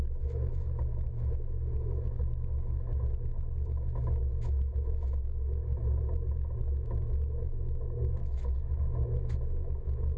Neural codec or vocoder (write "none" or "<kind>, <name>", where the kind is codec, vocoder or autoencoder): autoencoder, DAC-VAE